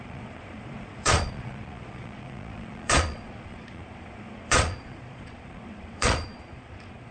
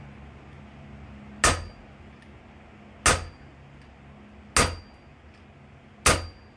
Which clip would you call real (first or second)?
second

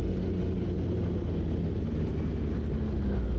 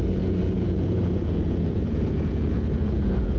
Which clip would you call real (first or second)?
first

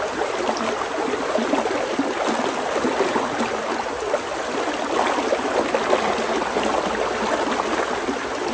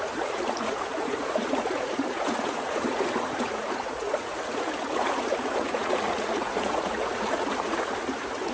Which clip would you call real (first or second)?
first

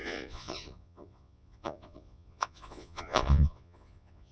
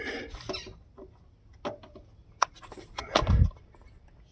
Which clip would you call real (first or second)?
second